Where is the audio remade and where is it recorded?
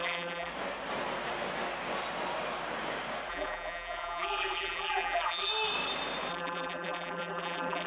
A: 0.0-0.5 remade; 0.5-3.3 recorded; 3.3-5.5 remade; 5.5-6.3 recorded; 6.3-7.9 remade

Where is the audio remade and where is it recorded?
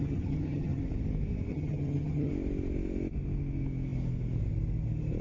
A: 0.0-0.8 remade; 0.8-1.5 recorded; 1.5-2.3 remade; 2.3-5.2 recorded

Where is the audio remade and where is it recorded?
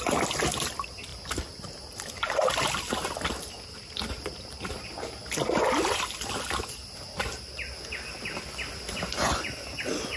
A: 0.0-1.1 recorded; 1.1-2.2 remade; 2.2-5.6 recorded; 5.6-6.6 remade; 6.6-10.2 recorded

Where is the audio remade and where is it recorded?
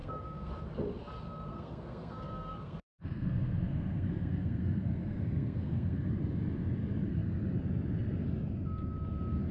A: 0.0-0.5 remade; 0.5-1.5 recorded; 1.5-6.1 remade; 6.1-9.5 recorded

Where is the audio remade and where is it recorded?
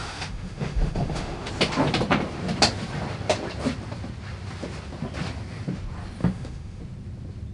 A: 0.0-1.5 remade; 1.5-6.2 recorded; 6.2-6.8 remade; 6.8-7.5 recorded